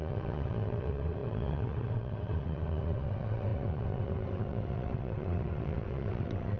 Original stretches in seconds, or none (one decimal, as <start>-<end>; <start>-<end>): none